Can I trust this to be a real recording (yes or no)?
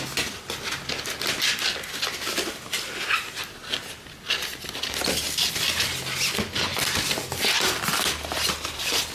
yes